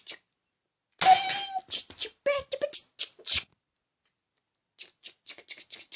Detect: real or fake real